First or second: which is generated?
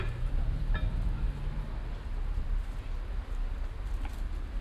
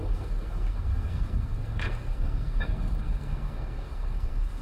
second